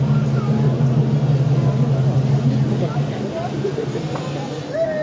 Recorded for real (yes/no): yes